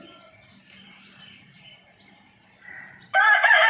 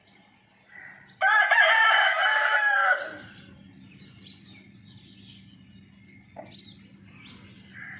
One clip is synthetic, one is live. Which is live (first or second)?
second